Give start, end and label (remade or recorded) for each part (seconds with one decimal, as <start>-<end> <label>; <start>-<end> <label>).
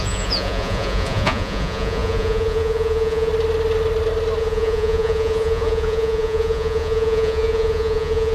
0.0-3.3 remade; 3.3-4.4 recorded; 4.4-8.3 remade